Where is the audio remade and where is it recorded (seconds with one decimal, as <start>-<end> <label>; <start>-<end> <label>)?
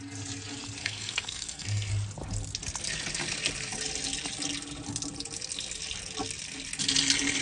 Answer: 0.0-0.8 recorded; 0.8-1.9 remade; 1.9-7.4 recorded